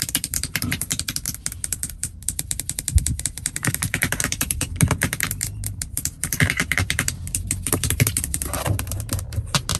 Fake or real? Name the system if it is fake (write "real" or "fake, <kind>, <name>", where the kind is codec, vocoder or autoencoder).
fake, vocoder, BigVGAN v2